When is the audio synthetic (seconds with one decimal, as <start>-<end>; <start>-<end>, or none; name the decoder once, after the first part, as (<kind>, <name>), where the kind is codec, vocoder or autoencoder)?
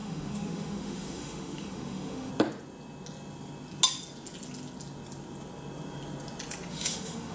0.0-2.3 (autoencoder, DAC-VAE); 6.7-7.3